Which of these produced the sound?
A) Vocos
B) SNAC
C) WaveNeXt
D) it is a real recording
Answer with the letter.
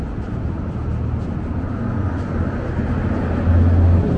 D